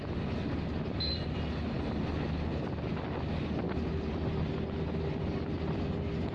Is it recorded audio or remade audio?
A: recorded